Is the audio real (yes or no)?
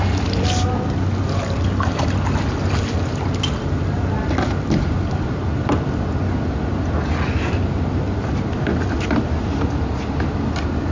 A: yes